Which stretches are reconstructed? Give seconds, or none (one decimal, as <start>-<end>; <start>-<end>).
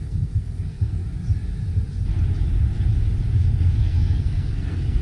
0.0-1.0; 3.4-5.0